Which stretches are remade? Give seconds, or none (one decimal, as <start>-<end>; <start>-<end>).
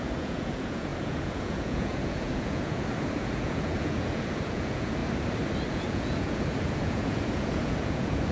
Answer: 0.0-5.0; 5.7-8.3